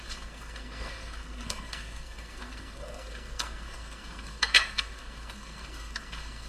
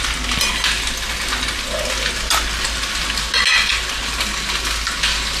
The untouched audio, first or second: second